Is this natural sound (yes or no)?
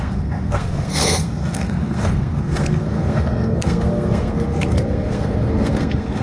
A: no